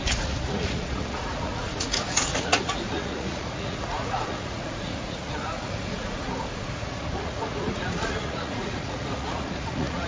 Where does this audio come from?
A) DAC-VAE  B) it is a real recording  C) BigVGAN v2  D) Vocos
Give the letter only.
D